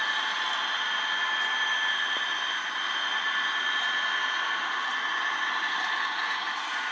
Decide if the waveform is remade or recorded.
recorded